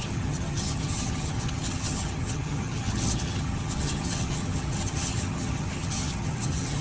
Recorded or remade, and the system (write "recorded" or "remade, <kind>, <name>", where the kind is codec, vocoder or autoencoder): remade, vocoder, HiFi-GAN